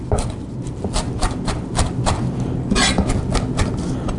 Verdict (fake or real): real